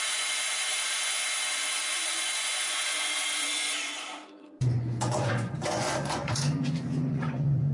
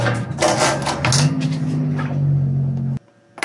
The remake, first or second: first